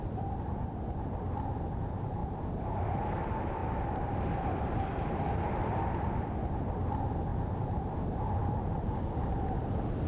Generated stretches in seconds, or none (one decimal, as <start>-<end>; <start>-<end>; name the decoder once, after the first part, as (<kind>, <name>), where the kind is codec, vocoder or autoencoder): none